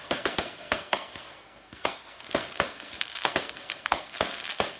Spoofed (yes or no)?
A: yes